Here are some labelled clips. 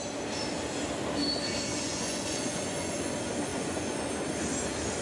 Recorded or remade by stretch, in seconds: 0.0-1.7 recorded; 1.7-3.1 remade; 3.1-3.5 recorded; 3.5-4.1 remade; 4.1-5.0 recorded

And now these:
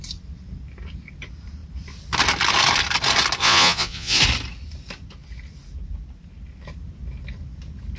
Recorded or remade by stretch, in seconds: 0.0-3.4 recorded; 3.4-4.2 remade; 4.2-8.0 recorded

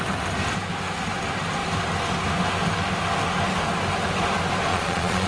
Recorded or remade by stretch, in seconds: 0.0-4.7 recorded; 4.7-5.3 remade

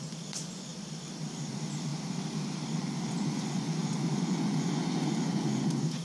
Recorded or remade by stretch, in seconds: 0.0-0.7 remade; 0.7-1.5 recorded; 1.5-1.9 remade; 1.9-3.1 recorded; 3.1-6.0 remade

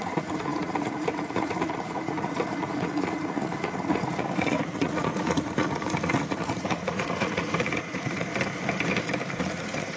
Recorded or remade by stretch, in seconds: 0.0-8.3 remade; 8.3-9.4 recorded; 9.4-10.0 remade